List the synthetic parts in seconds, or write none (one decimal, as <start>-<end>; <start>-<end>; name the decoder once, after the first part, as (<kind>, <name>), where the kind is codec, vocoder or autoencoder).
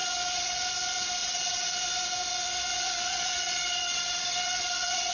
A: 0.0-0.7 (vocoder, WaveNeXt); 1.2-1.8; 2.7-5.1